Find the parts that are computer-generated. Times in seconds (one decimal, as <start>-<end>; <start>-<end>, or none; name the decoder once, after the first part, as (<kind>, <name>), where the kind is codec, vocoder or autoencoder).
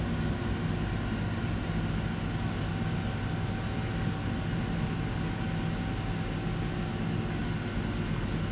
none